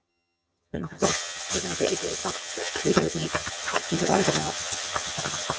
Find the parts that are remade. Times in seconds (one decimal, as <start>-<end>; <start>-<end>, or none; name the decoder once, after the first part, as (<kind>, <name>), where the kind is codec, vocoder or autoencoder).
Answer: 0.0-5.6 (vocoder, HiFi-GAN)